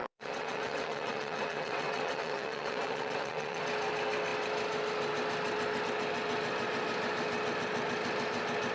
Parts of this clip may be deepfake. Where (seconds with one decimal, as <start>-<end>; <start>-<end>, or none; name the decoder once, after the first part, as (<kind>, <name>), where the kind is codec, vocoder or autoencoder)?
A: 0.0-3.6 (vocoder, WaveNeXt)